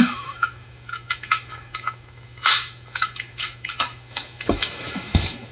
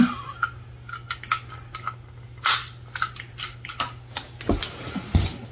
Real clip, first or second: second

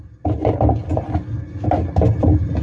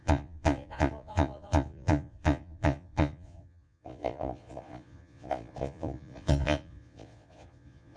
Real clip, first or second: first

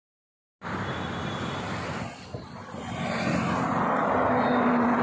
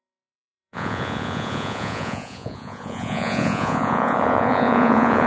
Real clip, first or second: first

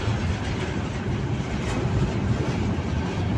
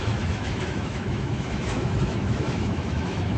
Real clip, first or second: first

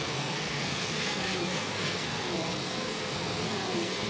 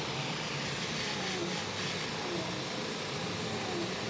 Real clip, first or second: second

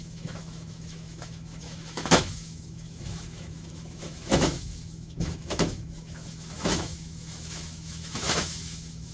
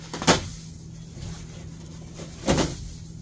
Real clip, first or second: second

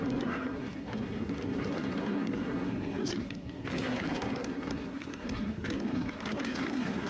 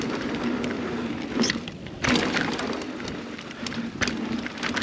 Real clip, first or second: second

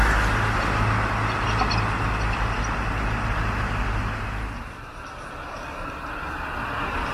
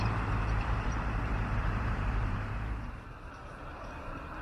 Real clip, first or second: first